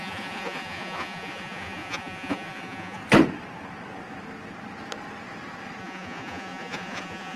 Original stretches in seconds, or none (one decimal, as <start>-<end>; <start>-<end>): 3.0-5.8